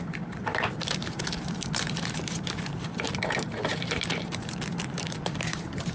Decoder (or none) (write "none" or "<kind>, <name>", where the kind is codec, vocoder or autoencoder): vocoder, BigVGAN v2